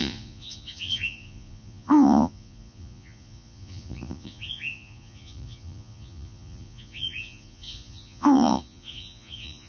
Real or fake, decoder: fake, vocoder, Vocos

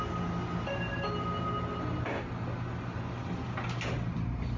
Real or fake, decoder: real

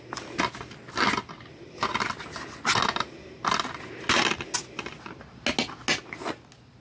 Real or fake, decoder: real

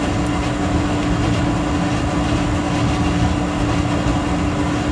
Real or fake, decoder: real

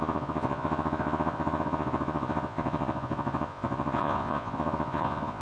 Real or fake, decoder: fake, vocoder, Vocos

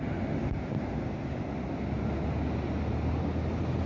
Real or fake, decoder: real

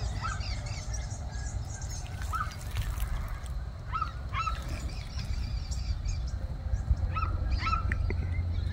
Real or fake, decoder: real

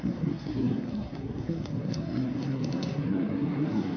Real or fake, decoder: fake, codec, SNAC